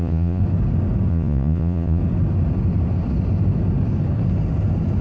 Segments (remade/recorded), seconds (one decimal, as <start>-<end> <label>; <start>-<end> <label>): 0.0-0.4 remade; 0.4-1.1 recorded; 1.1-2.0 remade; 2.0-5.0 recorded

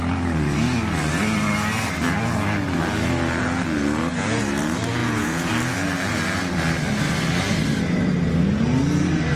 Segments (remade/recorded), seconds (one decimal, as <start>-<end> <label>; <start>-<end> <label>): 0.0-5.0 recorded; 5.0-5.5 remade; 5.5-9.4 recorded

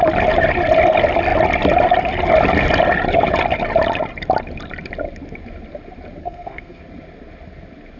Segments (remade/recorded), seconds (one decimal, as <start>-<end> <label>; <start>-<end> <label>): 0.0-6.2 recorded; 6.2-6.8 remade; 6.8-8.0 recorded